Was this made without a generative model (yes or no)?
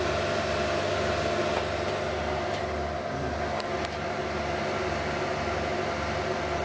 yes